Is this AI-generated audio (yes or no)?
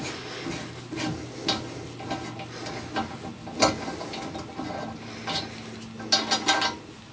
no